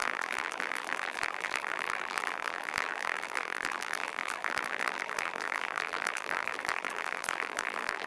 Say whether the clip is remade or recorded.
remade